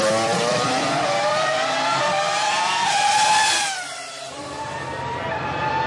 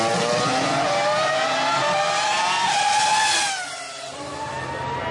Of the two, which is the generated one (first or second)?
first